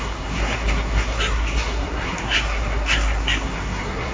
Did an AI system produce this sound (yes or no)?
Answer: yes